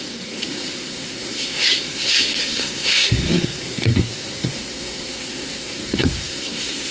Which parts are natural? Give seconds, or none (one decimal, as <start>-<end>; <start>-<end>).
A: none